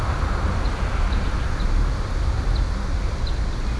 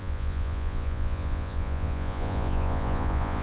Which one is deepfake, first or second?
second